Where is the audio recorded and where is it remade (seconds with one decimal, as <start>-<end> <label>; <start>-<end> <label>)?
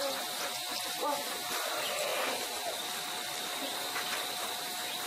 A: 0.0-2.1 recorded; 2.1-4.4 remade; 4.4-5.1 recorded